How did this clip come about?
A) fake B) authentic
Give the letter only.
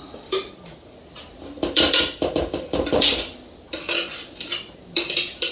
B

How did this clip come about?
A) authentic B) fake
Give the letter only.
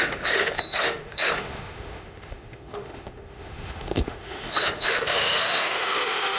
B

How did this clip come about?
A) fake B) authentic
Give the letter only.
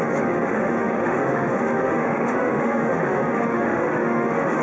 A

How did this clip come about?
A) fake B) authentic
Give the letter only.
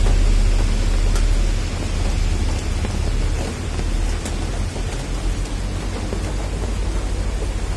B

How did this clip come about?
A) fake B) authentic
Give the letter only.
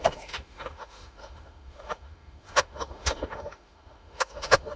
A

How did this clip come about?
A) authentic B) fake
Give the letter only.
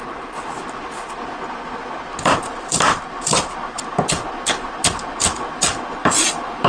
A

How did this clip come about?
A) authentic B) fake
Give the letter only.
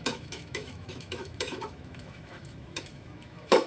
B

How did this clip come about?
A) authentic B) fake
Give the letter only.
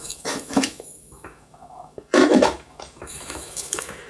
B